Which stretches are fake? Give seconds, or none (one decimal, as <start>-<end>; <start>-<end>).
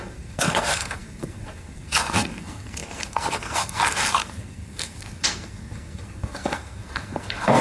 0.0-7.6